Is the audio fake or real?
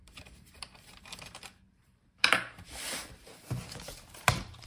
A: fake